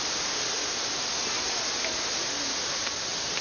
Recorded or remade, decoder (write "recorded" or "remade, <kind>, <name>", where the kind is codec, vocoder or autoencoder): recorded